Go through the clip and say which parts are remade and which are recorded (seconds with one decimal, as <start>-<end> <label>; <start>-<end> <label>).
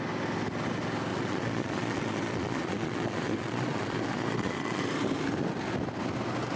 0.0-1.1 recorded; 1.1-4.8 remade; 4.8-6.6 recorded